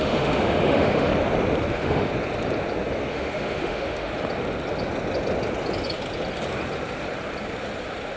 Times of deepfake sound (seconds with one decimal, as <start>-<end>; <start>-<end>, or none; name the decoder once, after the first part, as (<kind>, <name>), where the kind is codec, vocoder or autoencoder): 0.0-1.1 (autoencoder, DAC-VAE); 1.7-2.1; 3.1-4.1